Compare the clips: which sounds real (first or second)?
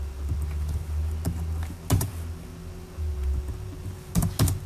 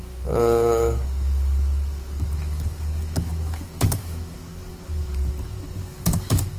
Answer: first